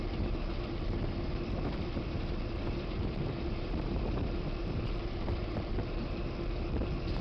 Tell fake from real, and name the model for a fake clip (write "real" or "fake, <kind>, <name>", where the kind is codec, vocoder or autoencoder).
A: fake, vocoder, BigVGAN v2